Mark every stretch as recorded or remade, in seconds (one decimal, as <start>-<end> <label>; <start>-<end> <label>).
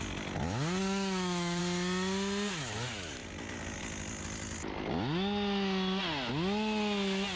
0.0-0.8 recorded; 0.8-1.6 remade; 1.6-7.4 recorded